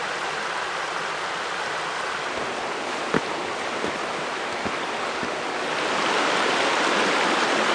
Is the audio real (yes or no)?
yes